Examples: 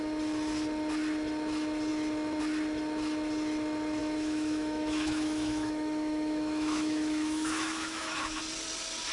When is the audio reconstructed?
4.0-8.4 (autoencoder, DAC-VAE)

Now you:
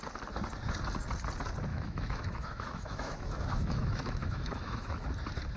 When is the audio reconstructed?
1.7-5.1 (autoencoder, DAC-VAE)